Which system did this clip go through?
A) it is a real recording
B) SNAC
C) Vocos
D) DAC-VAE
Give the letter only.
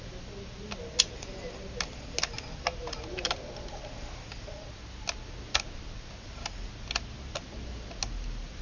A